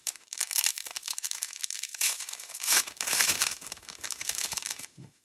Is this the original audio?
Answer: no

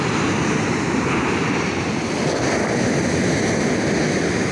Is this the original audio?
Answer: yes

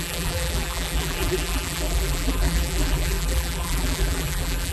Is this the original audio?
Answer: no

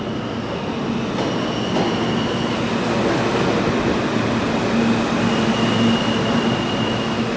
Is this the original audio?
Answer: yes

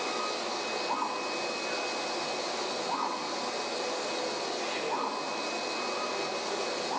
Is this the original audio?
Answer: yes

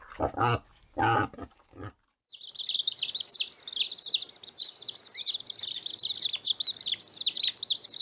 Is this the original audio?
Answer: yes